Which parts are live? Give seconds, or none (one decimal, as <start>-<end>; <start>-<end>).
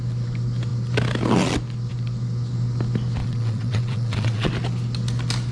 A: 0.0-3.2; 4.5-5.5